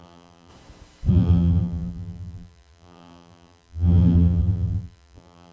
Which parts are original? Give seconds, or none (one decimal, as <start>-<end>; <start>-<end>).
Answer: 0.5-1.1